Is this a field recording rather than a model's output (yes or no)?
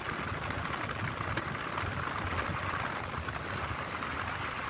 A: yes